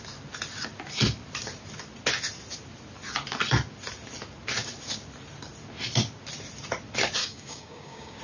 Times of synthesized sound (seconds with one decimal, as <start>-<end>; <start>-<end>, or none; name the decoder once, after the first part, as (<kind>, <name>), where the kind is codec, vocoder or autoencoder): 7.2-8.2 (codec, DAC)